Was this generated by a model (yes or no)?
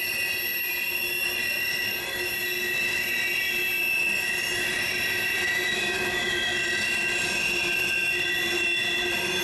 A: no